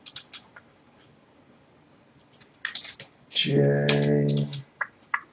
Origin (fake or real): real